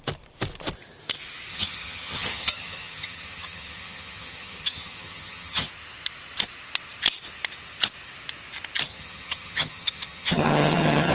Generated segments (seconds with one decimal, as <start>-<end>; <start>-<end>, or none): 1.5-5.7; 8.9-11.1